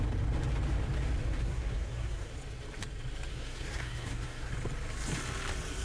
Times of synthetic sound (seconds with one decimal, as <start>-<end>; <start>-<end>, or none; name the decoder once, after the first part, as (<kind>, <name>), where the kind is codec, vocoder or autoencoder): 1.4-2.3 (codec, SNAC); 3.3-4.5